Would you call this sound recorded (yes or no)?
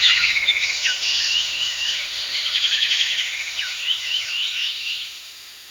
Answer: no